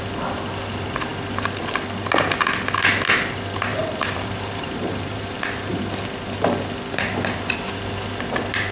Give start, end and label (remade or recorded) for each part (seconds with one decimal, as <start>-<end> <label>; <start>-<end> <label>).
0.0-3.7 recorded; 3.7-5.8 remade; 5.8-8.7 recorded